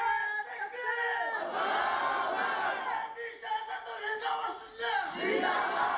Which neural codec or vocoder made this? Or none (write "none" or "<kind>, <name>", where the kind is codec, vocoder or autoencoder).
none